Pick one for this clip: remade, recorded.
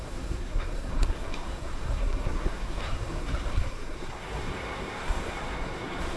remade